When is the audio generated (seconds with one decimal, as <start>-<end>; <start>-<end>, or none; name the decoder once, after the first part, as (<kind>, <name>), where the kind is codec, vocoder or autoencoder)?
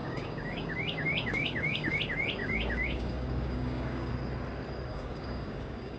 0.0-2.0 (codec, DAC); 2.4-4.1; 4.9-6.0